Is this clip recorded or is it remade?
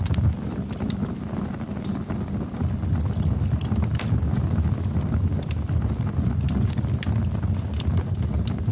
recorded